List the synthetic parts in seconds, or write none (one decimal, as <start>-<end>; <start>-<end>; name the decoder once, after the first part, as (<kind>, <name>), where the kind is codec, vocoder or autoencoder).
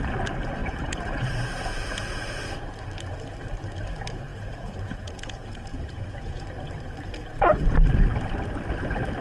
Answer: 0.6-2.4 (vocoder, Vocos); 4.3-6.4